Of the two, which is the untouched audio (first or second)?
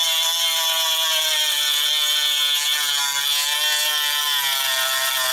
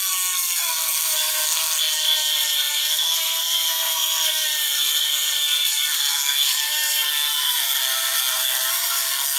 first